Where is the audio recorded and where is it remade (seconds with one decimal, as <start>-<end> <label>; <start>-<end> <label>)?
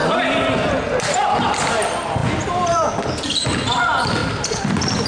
0.0-5.1 recorded